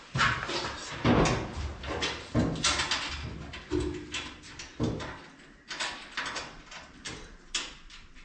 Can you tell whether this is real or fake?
real